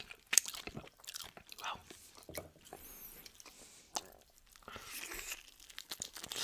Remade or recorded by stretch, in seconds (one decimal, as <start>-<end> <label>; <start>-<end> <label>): 0.0-6.4 remade